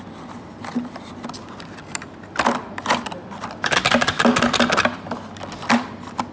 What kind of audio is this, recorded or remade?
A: recorded